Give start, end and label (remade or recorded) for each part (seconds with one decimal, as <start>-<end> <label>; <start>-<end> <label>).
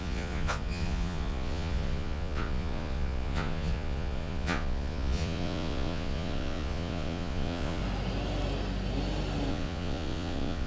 0.0-7.8 remade; 7.8-9.5 recorded; 9.5-10.7 remade